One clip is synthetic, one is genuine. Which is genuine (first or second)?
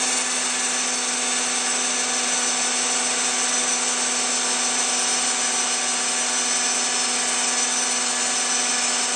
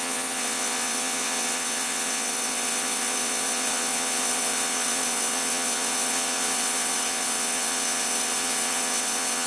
first